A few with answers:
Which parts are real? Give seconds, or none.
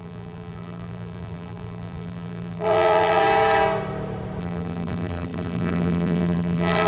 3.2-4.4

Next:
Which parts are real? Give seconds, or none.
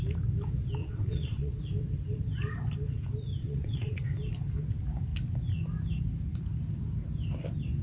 0.0-0.8; 1.5-3.4; 4.0-7.8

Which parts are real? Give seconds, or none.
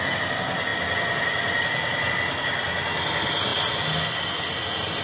0.0-5.0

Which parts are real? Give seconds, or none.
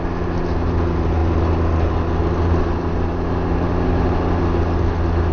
0.0-5.3